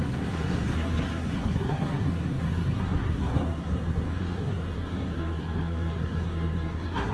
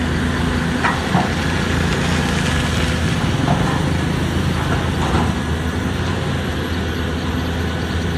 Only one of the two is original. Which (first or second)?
second